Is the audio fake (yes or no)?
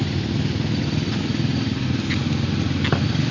no